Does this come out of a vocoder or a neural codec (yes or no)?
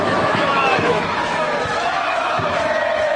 yes